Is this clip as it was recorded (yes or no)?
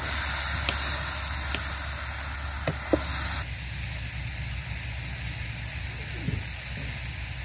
yes